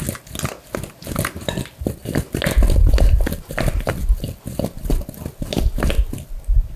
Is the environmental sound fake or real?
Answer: real